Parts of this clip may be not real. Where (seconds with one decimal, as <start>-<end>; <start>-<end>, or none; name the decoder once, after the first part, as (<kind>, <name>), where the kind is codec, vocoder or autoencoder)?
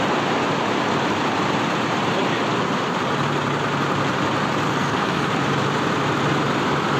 4.7-5.3 (codec, SNAC)